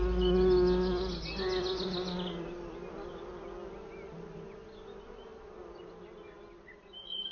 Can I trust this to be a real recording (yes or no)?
yes